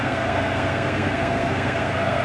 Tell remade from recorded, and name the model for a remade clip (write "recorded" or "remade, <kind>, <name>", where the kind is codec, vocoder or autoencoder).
remade, codec, SNAC